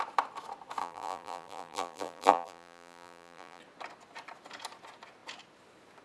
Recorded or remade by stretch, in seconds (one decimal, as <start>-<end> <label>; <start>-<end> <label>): 0.0-0.8 recorded; 0.8-3.6 remade; 3.6-6.0 recorded